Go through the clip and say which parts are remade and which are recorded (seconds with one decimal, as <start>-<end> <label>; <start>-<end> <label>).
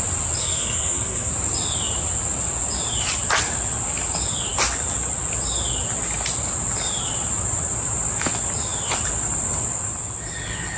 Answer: 0.0-0.4 recorded; 0.4-1.3 remade; 1.3-10.8 recorded